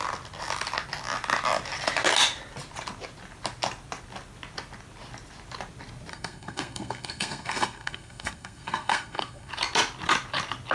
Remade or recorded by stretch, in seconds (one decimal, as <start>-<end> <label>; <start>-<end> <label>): 0.0-6.1 recorded; 6.1-9.5 remade; 9.5-10.7 recorded